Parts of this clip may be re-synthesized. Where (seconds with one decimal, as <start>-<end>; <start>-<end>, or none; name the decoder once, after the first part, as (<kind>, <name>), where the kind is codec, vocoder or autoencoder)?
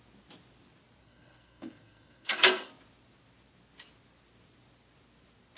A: 1.0-2.7 (codec, SNAC)